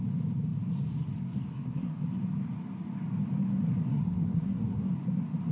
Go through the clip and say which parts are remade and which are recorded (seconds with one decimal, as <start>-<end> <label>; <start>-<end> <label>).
0.0-1.5 recorded; 1.5-2.0 remade; 2.0-3.9 recorded; 3.9-4.9 remade; 4.9-5.5 recorded